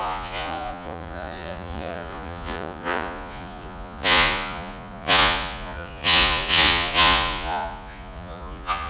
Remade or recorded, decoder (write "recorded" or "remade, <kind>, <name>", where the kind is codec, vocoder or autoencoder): remade, vocoder, Vocos